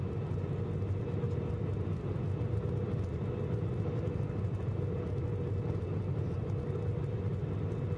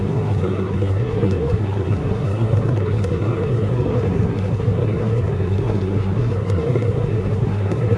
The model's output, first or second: second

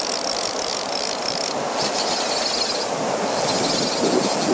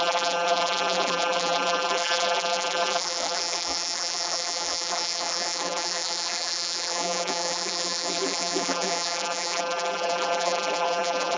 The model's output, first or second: second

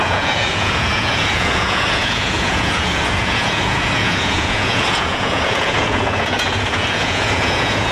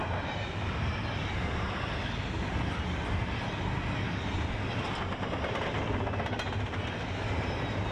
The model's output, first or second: first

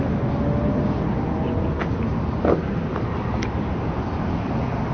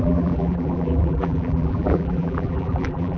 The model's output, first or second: second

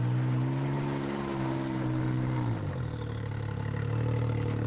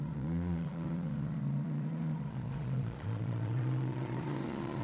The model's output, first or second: second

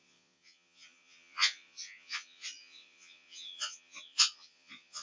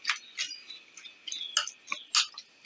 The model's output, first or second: first